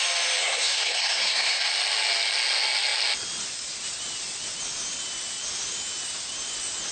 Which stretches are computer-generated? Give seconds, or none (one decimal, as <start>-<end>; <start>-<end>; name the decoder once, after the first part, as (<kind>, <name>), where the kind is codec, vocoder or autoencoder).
0.4-1.7 (codec, SNAC)